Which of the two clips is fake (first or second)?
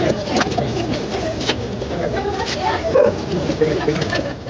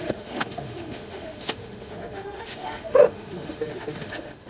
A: second